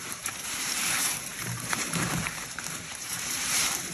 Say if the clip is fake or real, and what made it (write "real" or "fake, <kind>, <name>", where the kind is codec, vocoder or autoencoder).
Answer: fake, vocoder, BigVGAN v2